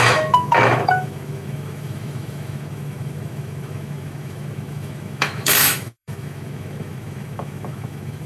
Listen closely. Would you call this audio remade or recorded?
remade